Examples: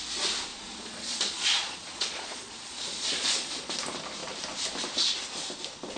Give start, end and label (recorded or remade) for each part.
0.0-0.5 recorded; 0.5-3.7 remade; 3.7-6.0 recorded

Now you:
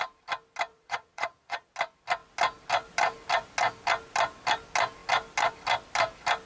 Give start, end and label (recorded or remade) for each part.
0.0-0.7 recorded; 0.7-1.7 remade; 1.7-6.5 recorded

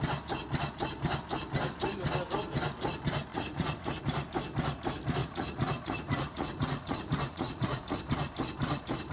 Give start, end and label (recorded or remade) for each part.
0.0-3.3 recorded; 3.3-4.0 remade; 4.0-5.2 recorded; 5.2-8.0 remade; 8.0-9.1 recorded

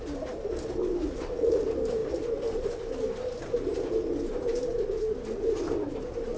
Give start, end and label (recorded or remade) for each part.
0.0-1.0 recorded; 1.0-1.6 remade; 1.6-6.4 recorded